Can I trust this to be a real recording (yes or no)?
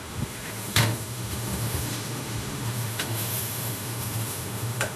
no